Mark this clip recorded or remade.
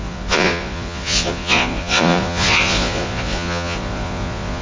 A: remade